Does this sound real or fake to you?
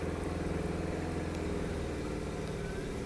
real